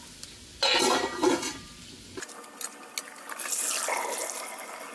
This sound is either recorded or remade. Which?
recorded